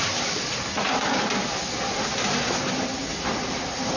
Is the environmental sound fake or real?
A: real